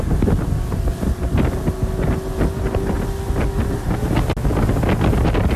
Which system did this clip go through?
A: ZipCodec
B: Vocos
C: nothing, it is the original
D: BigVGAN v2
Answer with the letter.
C